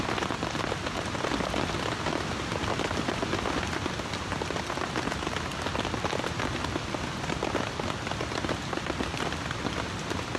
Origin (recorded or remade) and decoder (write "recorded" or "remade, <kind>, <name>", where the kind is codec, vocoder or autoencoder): recorded